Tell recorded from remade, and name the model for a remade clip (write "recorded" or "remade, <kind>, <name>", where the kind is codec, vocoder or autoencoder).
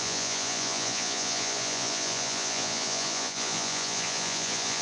remade, vocoder, Vocos